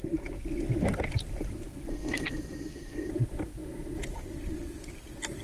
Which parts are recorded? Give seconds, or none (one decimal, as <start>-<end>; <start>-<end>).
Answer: 0.0-1.9; 3.1-5.4